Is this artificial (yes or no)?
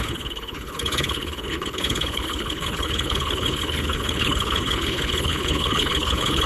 yes